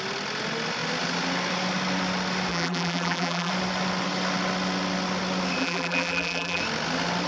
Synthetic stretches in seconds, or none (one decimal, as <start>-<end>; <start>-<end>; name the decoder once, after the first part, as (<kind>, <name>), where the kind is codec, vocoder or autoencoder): 2.5-3.5 (vocoder, BigVGAN v2); 5.6-6.6